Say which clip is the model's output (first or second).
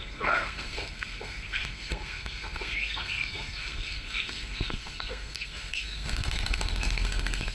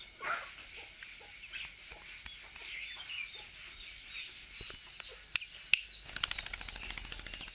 first